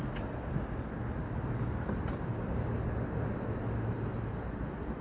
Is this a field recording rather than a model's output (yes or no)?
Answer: yes